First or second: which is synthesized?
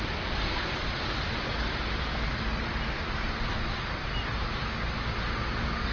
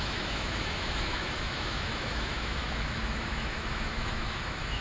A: second